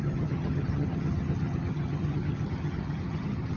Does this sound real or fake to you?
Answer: fake